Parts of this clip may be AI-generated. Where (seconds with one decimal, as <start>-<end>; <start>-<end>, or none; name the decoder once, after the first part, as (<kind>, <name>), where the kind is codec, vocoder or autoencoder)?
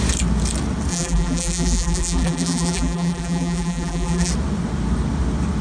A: 0.9-4.3 (vocoder, BigVGAN v2)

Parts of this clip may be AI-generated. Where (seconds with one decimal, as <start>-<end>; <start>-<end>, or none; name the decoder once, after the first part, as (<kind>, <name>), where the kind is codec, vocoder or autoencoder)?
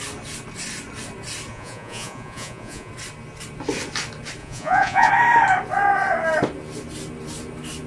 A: 1.5-2.9 (vocoder, Vocos); 4.4-5.1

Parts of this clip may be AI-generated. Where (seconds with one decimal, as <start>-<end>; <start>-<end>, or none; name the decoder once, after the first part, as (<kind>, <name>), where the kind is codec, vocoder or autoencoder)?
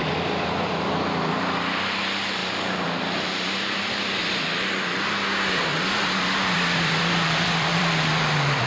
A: 0.0-8.7 (vocoder, BigVGAN v2)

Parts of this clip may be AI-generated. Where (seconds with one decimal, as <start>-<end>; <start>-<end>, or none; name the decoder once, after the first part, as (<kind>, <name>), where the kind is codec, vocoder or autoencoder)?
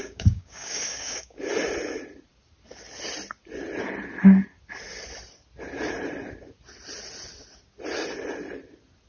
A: 0.0-1.4 (codec, DAC)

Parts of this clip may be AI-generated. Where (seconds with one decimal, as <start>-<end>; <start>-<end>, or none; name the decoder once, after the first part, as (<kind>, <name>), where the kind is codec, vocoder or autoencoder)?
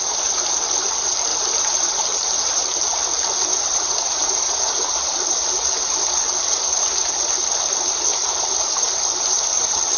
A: 1.3-2.6 (vocoder, BigVGAN v2); 3.5-7.1; 8.1-9.6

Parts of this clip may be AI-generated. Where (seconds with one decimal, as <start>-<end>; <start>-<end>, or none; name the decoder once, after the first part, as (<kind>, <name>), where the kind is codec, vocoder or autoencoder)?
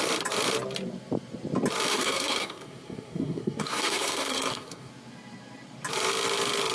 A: 1.9-4.9 (codec, SNAC)